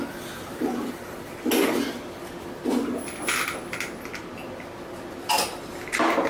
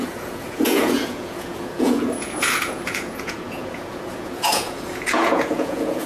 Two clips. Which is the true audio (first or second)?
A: first